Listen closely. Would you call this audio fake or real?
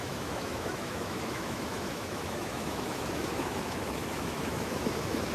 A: fake